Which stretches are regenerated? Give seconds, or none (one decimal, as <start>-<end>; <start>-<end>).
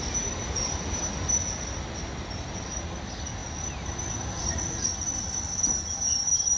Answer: none